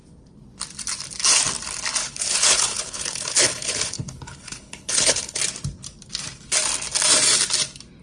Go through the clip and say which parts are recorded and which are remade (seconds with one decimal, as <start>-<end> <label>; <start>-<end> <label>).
0.0-2.0 recorded; 2.0-5.4 remade; 5.4-8.0 recorded